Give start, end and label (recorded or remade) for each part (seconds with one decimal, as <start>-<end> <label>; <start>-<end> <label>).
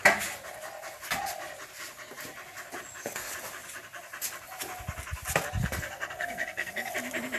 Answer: 0.0-5.6 recorded; 5.6-6.9 remade; 6.9-7.4 recorded